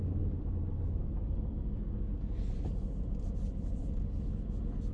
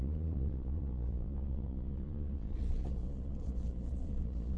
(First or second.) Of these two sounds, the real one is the first